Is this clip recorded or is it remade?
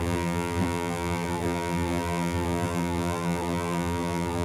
remade